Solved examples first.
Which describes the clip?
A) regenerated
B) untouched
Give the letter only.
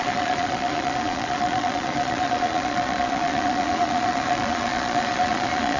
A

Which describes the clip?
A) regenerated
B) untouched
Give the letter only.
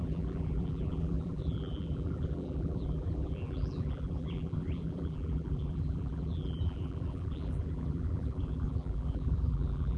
A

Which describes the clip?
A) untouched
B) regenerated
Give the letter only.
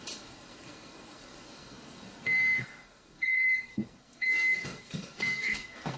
B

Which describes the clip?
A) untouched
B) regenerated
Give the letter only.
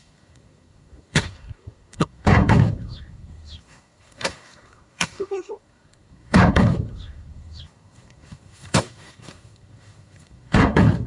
B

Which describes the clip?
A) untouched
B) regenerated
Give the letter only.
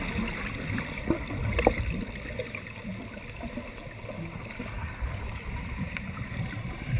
A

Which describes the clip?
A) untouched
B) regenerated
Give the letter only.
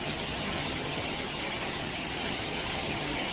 B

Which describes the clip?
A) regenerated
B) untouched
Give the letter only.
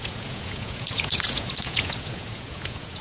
A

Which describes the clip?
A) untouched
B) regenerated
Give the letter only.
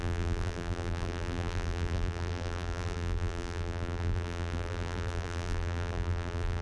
B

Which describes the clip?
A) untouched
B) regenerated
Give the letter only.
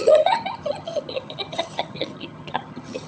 B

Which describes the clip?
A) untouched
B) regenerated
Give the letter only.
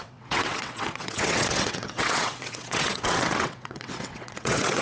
B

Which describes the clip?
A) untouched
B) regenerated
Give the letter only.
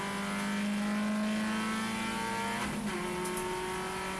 A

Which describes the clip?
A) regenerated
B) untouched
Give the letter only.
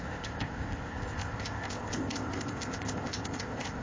A